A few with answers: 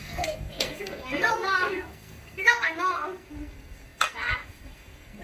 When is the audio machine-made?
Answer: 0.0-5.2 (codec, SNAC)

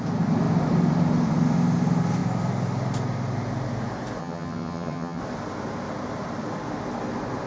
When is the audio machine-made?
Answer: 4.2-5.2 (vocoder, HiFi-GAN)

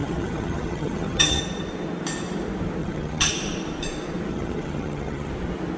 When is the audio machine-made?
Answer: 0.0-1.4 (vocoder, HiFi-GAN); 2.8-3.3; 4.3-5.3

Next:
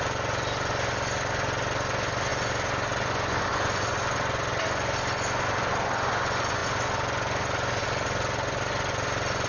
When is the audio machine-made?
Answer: 0.0-9.5 (vocoder, Vocos)

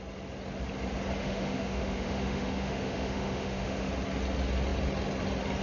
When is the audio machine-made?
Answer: 1.2-3.9 (autoencoder, DAC-VAE)

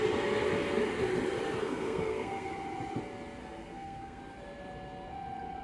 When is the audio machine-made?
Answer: 1.6-2.5 (codec, SNAC); 3.4-4.2

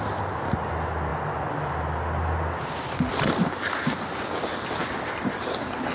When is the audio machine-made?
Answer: none

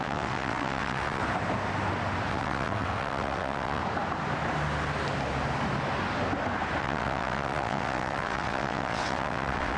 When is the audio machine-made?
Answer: 0.0-1.2 (vocoder, WaveNeXt); 2.3-3.8; 6.8-9.8